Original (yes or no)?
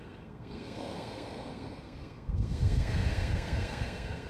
no